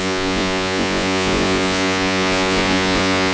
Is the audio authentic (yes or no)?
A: no